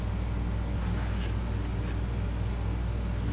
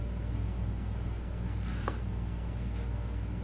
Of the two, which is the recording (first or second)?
first